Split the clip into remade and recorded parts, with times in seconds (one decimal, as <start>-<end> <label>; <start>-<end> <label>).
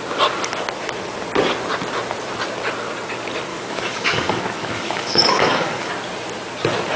0.0-3.5 recorded; 3.5-5.9 remade; 5.9-7.0 recorded